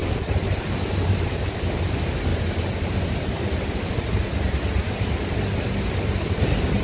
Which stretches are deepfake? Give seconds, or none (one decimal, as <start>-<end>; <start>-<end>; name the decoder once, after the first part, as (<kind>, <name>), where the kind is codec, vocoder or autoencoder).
1.1-2.3 (vocoder, BigVGAN v2)